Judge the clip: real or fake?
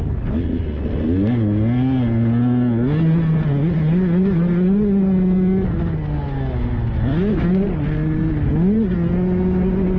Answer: real